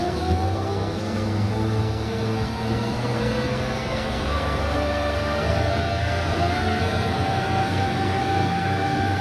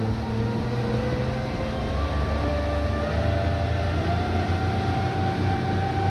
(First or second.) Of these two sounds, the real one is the second